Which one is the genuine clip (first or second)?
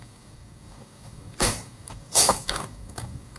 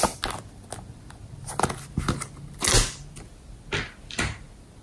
second